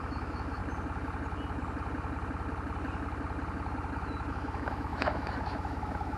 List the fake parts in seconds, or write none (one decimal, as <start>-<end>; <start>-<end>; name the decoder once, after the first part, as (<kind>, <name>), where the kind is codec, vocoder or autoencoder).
0.0-0.6 (autoencoder, DAC-VAE); 4.3-6.2